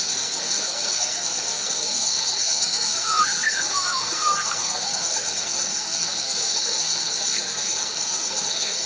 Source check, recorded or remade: remade